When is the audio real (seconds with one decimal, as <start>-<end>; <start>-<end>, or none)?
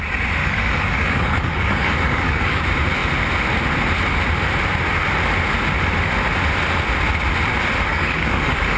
0.0-0.4; 2.6-7.9